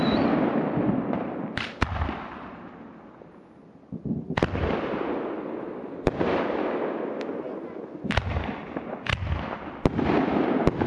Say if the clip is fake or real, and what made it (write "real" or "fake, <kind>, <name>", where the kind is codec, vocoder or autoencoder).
real